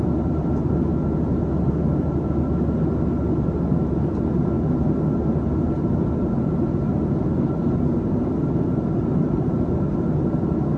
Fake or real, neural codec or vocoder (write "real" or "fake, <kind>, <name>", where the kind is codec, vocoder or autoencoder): real